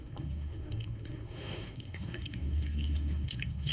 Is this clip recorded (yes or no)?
no